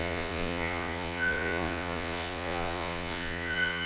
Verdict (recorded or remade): remade